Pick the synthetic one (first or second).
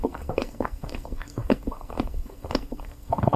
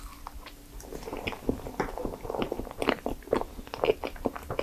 first